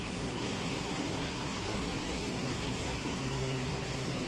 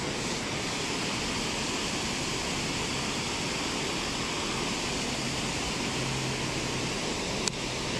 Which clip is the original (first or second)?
second